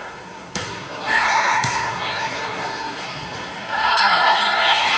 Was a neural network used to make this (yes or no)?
yes